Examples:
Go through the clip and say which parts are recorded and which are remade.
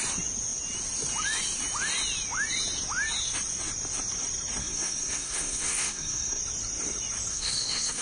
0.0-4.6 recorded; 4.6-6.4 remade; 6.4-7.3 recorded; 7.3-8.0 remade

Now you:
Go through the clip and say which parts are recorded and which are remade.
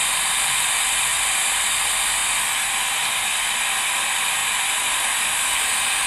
0.0-2.2 remade; 2.2-3.4 recorded; 3.4-6.1 remade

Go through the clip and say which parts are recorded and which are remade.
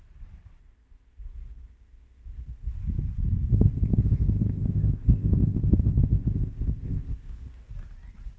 0.0-0.6 recorded; 0.6-2.7 remade; 2.7-3.5 recorded; 3.5-7.7 remade; 7.7-8.4 recorded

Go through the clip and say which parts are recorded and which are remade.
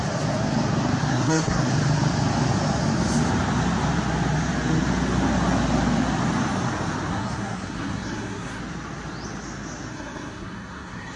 0.0-1.0 recorded; 1.0-1.7 remade; 1.7-7.1 recorded; 7.1-8.6 remade; 8.6-9.9 recorded; 9.9-11.2 remade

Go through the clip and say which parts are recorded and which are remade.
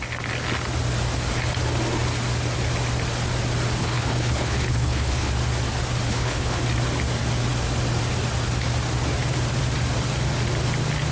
0.0-3.8 recorded; 3.8-5.3 remade; 5.3-6.1 recorded; 6.1-6.6 remade; 6.6-11.1 recorded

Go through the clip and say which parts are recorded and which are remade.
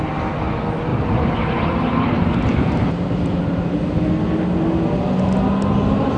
0.0-0.9 recorded; 0.9-3.7 remade; 3.7-6.2 recorded